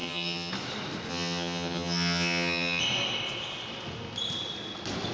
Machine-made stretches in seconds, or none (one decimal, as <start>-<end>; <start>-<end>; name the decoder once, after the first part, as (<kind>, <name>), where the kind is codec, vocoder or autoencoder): 0.0-0.5 (vocoder, HiFi-GAN); 1.1-2.8